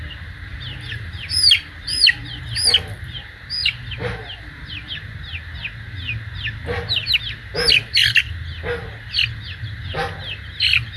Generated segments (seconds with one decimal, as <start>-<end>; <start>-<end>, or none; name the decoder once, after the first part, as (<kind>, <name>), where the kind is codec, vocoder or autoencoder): 0.5-2.4 (vocoder, BigVGAN v2); 3.6-4.9